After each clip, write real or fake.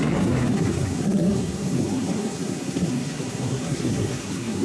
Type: fake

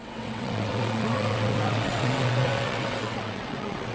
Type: fake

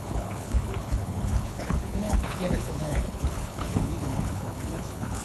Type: fake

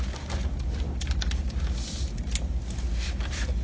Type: real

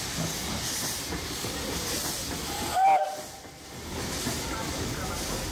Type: real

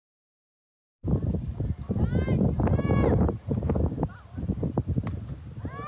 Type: real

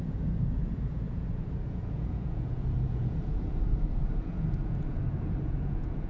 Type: fake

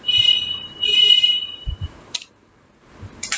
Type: fake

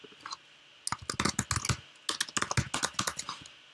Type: real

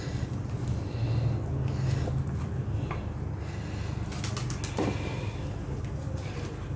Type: real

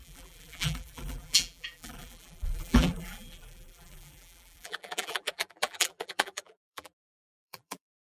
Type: fake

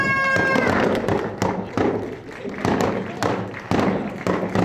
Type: real